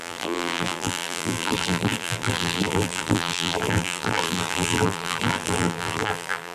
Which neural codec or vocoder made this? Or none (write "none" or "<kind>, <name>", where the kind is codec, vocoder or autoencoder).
vocoder, BigVGAN v2